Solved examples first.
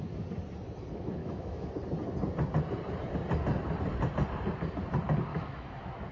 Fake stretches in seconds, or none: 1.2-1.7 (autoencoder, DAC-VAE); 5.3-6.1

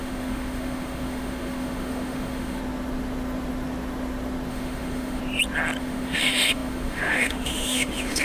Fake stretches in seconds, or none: 0.0-2.6 (autoencoder, DAC-VAE); 4.5-5.2; 5.8-8.2

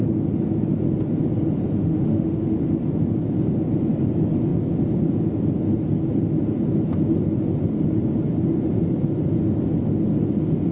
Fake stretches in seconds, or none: 1.8-2.9 (autoencoder, DAC-VAE)